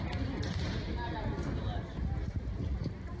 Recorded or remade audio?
recorded